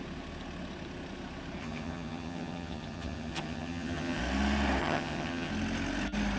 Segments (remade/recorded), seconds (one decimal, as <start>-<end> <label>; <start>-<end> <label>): 0.0-1.6 recorded; 1.6-4.2 remade; 4.2-4.8 recorded; 4.8-5.5 remade; 5.5-6.4 recorded